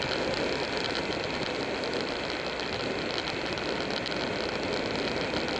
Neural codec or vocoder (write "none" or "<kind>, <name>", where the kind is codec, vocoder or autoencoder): none